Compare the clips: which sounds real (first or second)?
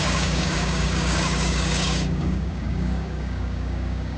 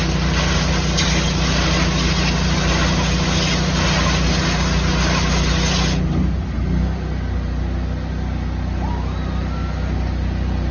second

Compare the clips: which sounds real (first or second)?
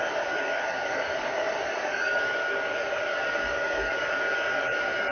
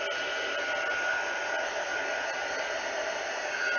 second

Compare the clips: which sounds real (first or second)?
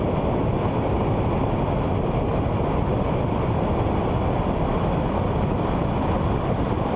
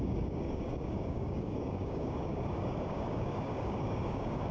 first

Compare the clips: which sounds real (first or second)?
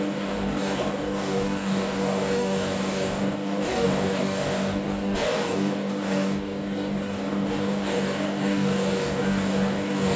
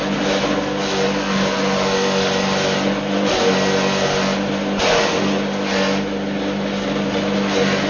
second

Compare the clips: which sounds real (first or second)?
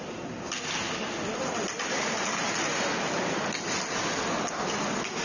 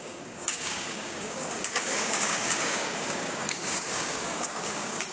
first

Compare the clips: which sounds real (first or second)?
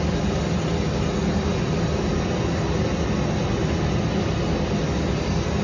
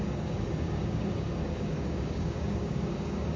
first